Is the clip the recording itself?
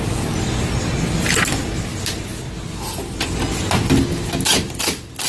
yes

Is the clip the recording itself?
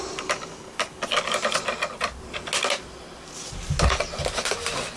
yes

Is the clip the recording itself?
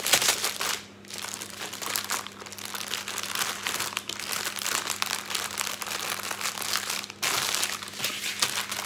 yes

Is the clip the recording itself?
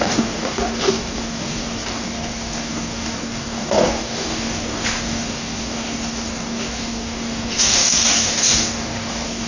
no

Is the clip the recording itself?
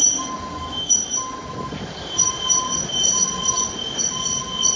yes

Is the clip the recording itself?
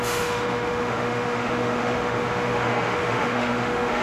no